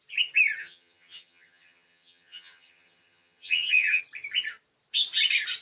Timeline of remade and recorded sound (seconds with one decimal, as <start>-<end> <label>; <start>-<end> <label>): 0.0-0.6 recorded; 0.6-4.0 remade; 4.0-5.6 recorded